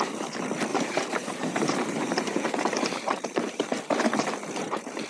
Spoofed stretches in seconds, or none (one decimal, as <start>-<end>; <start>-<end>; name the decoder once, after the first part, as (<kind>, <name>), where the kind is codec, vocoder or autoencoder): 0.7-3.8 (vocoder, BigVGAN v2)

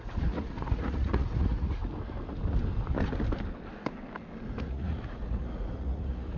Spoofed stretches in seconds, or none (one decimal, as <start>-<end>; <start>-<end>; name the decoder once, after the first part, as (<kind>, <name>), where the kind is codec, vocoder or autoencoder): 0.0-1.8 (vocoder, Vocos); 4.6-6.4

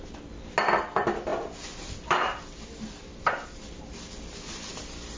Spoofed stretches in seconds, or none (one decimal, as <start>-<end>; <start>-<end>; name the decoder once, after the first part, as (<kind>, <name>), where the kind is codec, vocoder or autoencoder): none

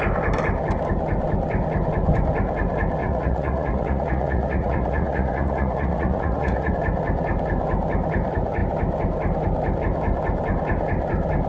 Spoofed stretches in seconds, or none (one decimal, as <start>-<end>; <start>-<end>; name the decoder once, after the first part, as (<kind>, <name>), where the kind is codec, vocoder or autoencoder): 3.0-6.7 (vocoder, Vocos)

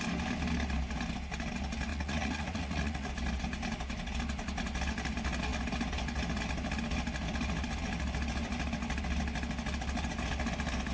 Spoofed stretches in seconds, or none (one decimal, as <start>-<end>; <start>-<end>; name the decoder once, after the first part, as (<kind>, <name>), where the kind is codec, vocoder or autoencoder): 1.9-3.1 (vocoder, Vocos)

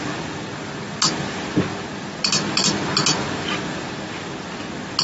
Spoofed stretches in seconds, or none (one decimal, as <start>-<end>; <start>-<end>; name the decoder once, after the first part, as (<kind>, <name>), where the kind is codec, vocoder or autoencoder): none

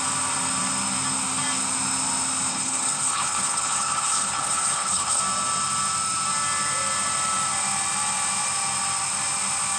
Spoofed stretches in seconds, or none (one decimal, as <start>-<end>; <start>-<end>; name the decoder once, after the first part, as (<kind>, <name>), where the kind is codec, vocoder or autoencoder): 2.5-5.2 (codec, HILCodec)

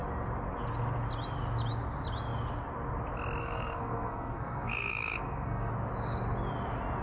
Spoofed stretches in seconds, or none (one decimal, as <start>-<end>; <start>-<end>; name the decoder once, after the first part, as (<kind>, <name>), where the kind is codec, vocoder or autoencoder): 3.4-5.7 (codec, SNAC)